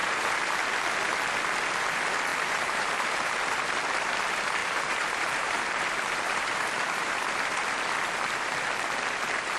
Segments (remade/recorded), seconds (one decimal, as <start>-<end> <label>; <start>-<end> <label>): 0.0-0.5 remade; 0.5-2.3 recorded; 2.3-3.4 remade; 3.4-4.6 recorded; 4.6-7.1 remade; 7.1-9.6 recorded